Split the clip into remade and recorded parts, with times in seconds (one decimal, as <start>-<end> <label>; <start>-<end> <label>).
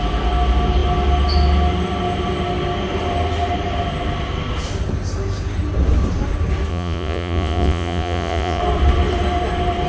0.0-6.7 recorded; 6.7-8.6 remade; 8.6-9.9 recorded